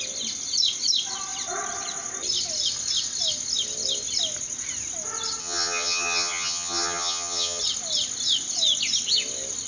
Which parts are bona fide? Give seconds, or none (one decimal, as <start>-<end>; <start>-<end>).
0.0-5.4; 7.6-9.7